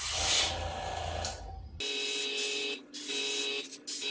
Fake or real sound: real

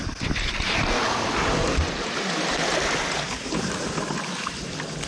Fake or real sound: real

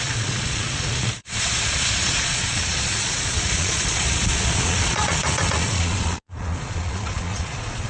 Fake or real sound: fake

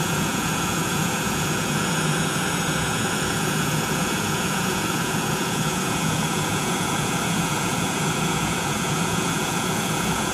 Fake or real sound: fake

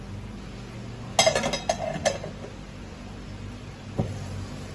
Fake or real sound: real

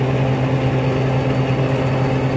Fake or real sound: real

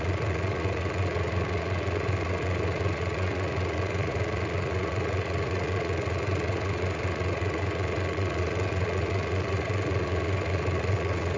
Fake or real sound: fake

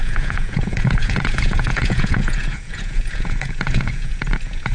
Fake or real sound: fake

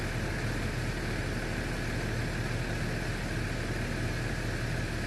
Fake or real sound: real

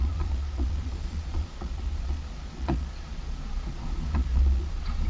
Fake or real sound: fake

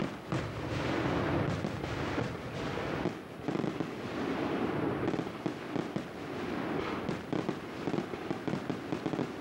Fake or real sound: real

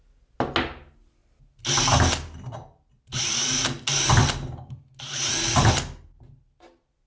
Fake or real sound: real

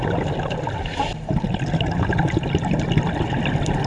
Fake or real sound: real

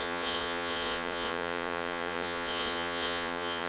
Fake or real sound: fake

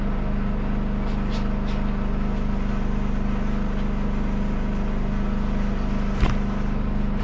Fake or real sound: real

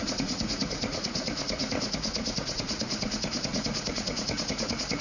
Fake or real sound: fake